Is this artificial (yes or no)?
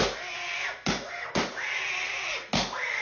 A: no